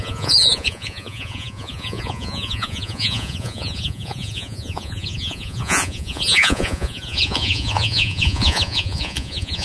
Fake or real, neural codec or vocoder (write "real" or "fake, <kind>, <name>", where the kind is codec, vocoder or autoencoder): fake, vocoder, Vocos